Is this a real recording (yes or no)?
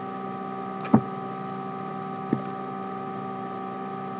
yes